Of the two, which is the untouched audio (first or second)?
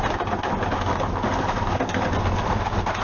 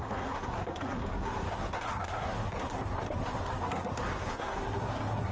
first